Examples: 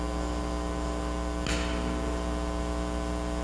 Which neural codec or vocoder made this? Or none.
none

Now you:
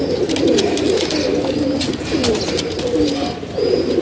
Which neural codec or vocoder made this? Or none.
none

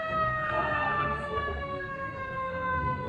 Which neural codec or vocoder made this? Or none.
codec, SNAC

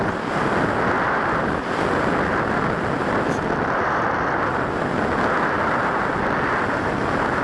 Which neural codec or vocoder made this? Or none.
none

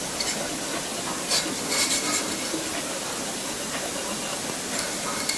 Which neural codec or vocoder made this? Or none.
none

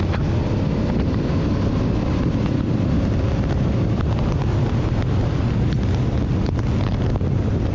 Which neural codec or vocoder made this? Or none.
none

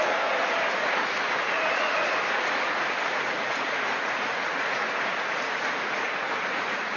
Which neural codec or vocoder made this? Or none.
vocoder, Vocos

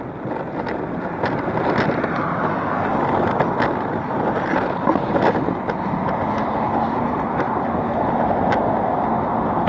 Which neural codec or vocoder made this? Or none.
none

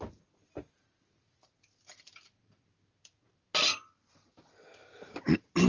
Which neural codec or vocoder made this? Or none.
none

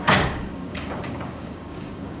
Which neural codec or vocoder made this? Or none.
codec, DAC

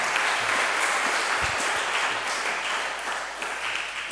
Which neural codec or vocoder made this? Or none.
none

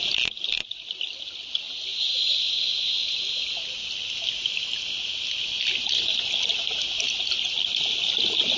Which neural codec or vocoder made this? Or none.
none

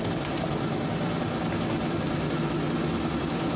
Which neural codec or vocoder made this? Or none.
none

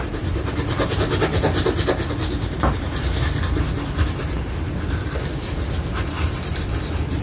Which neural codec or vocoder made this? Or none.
none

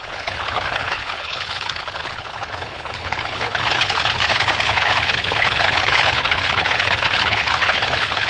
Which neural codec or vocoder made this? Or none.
codec, HILCodec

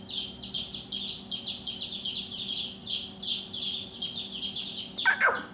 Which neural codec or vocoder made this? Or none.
none